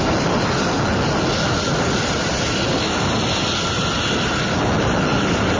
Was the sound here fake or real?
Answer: real